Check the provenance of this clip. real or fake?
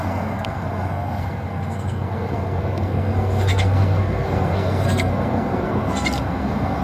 fake